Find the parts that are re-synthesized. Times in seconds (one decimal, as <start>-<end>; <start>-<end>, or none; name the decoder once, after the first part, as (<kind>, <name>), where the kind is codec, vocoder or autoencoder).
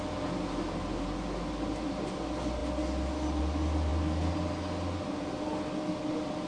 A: none